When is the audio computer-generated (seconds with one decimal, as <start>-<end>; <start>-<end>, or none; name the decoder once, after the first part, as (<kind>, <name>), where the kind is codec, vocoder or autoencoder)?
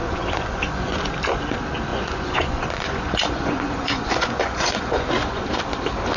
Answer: 0.0-1.1 (vocoder, Vocos); 1.9-5.6